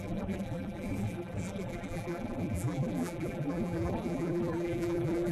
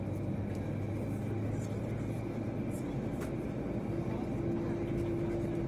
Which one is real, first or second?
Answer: second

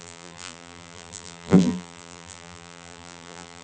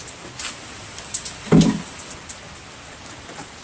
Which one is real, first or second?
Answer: second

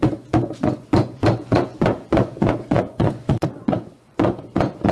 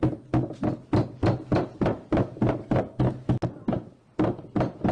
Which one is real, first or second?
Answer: second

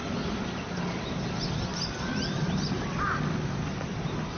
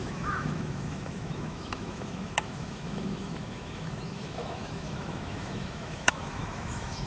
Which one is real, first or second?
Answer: first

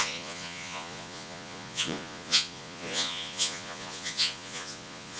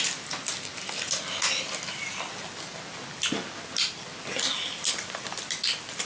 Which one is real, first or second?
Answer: second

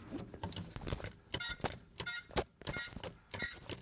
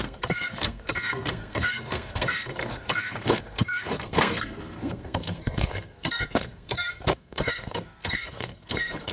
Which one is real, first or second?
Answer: first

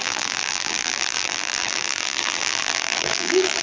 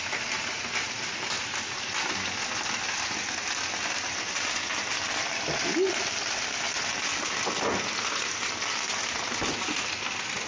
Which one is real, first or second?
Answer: second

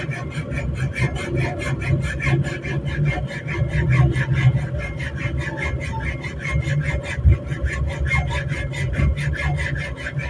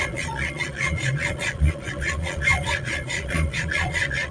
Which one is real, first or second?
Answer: first